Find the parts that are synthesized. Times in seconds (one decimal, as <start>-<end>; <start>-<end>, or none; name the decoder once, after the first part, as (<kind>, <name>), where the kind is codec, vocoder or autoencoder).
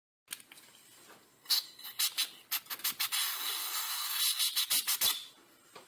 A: 3.6-4.2 (codec, SNAC)